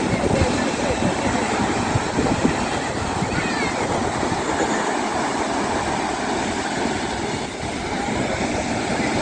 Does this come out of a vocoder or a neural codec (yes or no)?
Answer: no